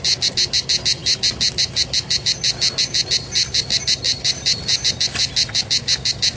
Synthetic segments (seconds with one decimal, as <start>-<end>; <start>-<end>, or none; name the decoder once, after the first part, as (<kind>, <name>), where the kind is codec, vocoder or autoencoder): none